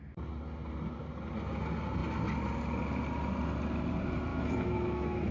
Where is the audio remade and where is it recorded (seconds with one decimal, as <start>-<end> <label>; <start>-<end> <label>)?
0.0-4.3 recorded; 4.3-5.3 remade